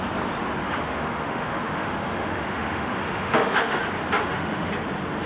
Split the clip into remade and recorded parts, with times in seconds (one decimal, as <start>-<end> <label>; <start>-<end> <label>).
0.0-0.6 recorded; 0.6-3.8 remade; 3.8-4.2 recorded; 4.2-4.7 remade; 4.7-5.3 recorded